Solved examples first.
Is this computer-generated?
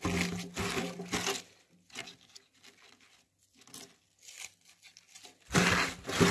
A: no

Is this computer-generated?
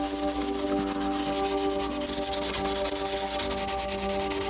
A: no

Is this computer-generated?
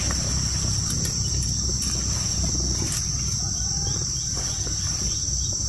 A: no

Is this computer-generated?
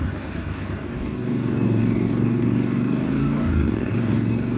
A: yes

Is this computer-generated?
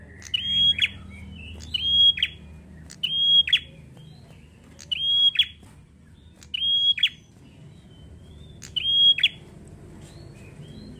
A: no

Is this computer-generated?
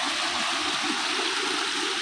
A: no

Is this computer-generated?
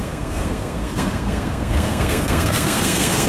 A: yes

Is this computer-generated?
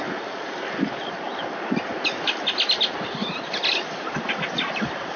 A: no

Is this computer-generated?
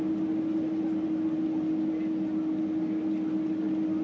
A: no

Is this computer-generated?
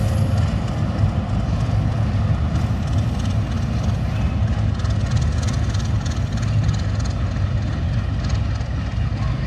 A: no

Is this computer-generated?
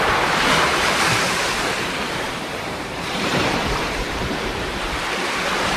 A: yes